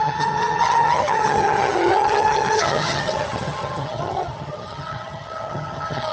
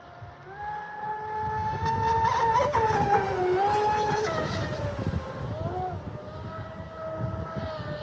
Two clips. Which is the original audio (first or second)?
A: second